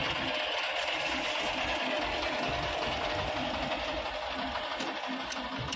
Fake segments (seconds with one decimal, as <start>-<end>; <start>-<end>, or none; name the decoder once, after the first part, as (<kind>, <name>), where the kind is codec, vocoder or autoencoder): none